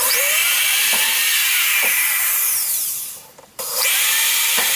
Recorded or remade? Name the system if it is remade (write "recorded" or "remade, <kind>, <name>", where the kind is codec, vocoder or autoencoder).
remade, vocoder, BigVGAN v2